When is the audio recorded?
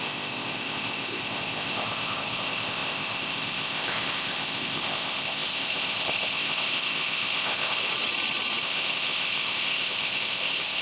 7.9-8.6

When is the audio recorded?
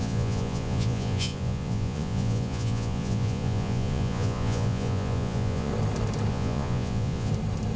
5.7-6.3; 7.3-7.8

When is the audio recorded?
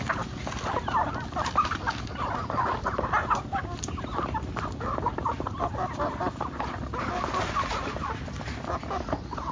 0.0-9.5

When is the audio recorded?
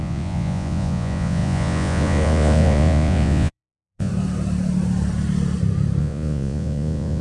4.1-6.0